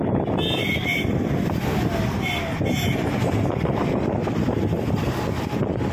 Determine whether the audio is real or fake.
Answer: real